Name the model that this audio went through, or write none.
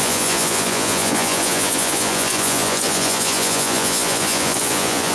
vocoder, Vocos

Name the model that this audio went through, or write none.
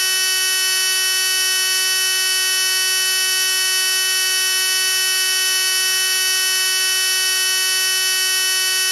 none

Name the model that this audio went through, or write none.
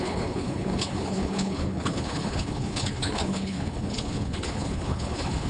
codec, HILCodec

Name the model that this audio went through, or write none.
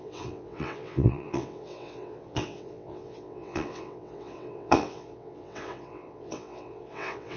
vocoder, WaveNeXt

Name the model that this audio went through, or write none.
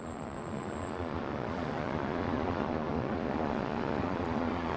vocoder, Vocos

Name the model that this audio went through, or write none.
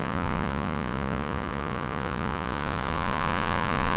vocoder, Vocos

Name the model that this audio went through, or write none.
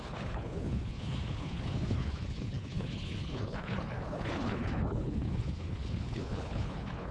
codec, HILCodec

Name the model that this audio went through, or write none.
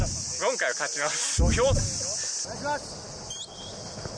none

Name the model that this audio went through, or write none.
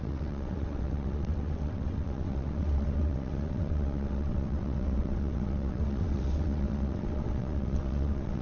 vocoder, WaveNeXt